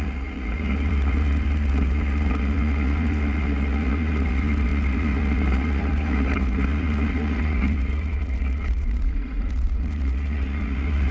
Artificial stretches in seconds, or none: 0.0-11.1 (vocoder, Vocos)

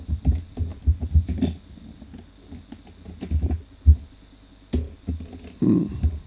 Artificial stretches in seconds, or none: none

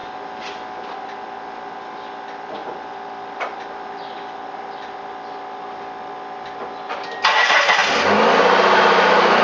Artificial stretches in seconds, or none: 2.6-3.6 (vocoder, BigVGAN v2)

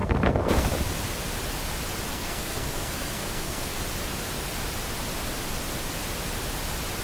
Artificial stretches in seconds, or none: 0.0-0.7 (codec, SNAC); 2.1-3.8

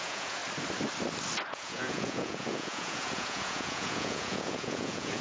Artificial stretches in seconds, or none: 0.0-0.4 (vocoder, Vocos); 1.5-5.2

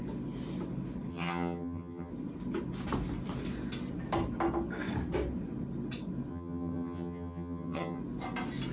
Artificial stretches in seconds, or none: 1.1-2.1 (vocoder, HiFi-GAN); 6.3-8.0

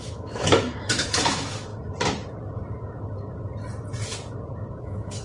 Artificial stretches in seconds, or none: 0.0-1.7 (autoencoder, DAC-VAE); 4.8-5.2